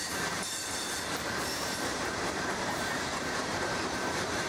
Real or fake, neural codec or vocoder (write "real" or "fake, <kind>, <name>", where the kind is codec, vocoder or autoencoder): fake, vocoder, BigVGAN v2